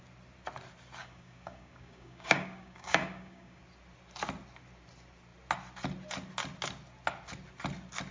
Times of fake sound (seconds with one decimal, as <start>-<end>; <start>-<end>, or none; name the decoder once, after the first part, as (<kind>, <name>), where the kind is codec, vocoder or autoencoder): 1.0-3.6 (codec, DAC)

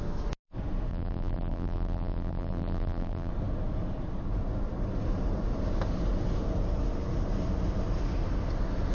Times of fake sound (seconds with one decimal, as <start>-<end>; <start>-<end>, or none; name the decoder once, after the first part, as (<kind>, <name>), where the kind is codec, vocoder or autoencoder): 0.9-3.3 (vocoder, BigVGAN v2)